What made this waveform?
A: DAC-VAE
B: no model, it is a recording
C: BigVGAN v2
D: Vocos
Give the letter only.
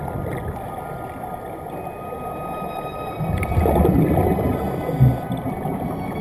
B